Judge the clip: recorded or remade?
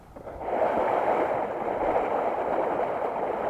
recorded